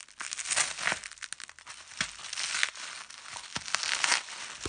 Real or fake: real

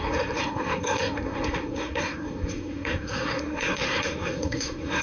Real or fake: fake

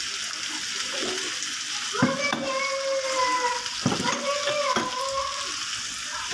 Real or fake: real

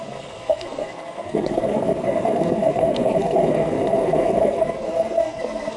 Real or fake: fake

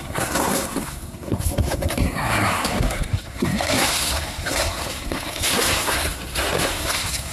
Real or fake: fake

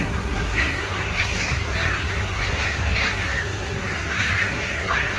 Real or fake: fake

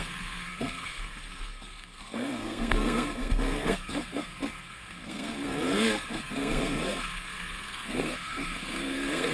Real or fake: fake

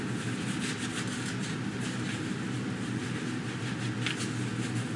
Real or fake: real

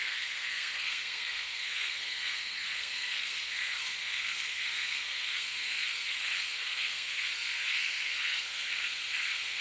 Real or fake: fake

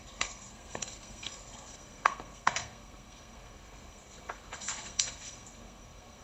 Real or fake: fake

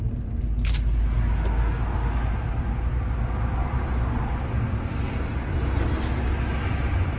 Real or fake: real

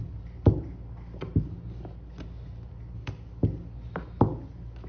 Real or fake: real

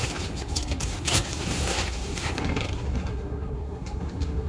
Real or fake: fake